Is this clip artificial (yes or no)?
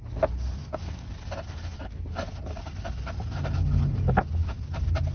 no